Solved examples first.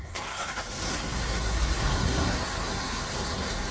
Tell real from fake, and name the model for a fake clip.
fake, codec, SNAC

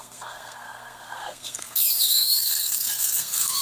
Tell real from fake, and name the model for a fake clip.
fake, codec, SNAC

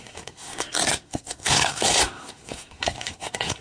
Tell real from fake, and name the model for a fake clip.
fake, codec, SNAC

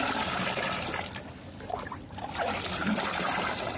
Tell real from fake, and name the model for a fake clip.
real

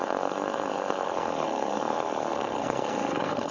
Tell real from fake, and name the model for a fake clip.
fake, codec, SNAC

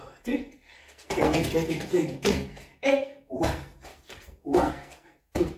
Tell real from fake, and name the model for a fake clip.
fake, codec, SNAC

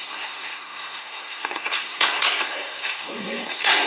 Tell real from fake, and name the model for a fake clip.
fake, codec, SNAC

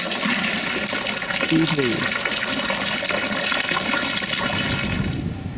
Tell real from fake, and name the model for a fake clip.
real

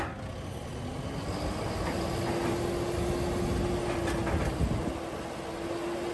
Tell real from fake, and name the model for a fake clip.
real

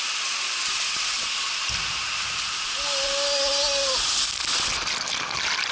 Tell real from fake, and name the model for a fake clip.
real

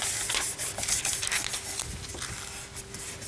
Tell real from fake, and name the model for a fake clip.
real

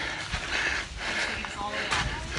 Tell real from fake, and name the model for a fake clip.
real